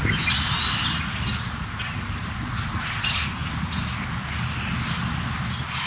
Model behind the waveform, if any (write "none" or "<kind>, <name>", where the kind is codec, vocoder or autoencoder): none